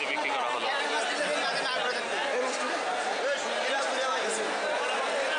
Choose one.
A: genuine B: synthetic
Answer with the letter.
A